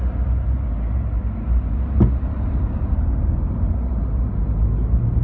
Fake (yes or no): no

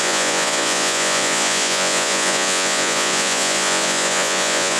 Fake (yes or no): yes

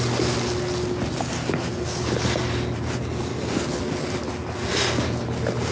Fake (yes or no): no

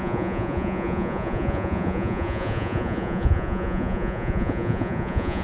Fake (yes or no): yes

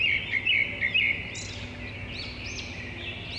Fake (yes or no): no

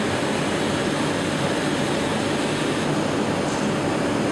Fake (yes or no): no